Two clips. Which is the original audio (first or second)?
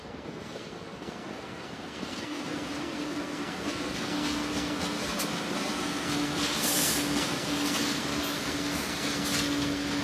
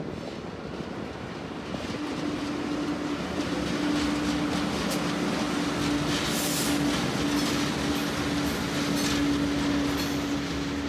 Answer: second